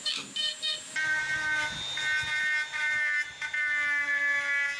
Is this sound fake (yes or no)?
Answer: no